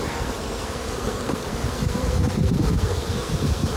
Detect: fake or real fake